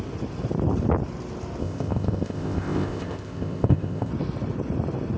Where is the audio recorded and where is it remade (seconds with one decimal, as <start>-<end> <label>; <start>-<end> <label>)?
0.0-1.6 recorded; 1.6-4.1 remade; 4.1-5.2 recorded